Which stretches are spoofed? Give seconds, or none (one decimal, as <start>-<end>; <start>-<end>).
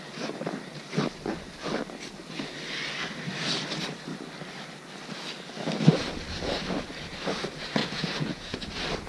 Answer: 7.8-8.7